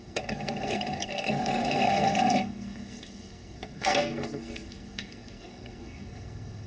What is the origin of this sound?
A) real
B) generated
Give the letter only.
B